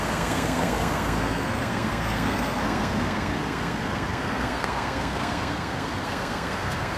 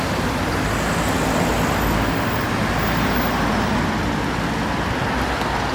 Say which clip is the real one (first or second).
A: second